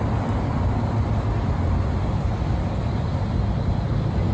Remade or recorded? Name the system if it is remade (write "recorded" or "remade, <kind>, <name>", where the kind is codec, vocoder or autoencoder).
recorded